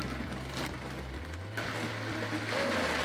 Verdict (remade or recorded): recorded